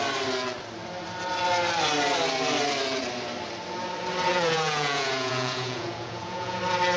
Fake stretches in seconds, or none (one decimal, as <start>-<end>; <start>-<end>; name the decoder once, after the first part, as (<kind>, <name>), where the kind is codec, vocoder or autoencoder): 4.3-6.6 (vocoder, Vocos)